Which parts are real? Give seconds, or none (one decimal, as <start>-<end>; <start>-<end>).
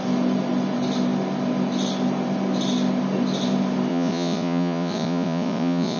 0.0-3.9